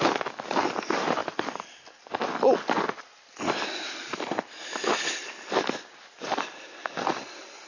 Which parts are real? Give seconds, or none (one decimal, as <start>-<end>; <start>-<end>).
0.0-7.7